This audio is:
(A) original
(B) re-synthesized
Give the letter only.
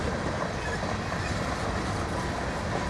A